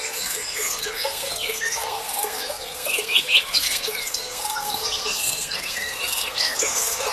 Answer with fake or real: fake